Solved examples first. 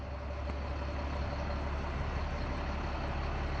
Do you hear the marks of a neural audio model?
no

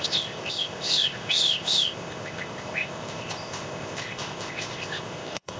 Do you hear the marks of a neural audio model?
yes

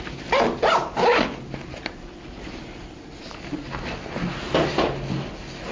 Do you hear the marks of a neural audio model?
no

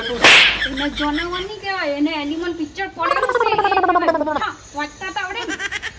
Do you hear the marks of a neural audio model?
no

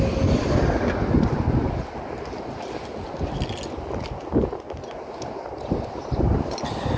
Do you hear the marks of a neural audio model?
no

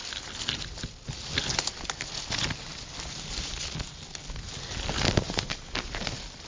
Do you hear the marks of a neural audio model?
no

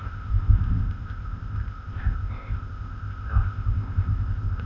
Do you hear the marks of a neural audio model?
yes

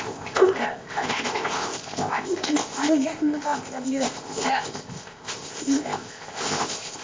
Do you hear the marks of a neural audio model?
yes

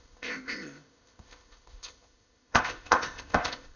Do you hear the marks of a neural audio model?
yes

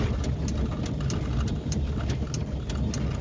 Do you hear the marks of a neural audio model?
no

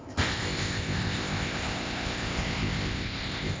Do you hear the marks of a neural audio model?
yes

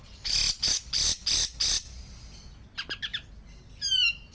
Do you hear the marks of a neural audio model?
no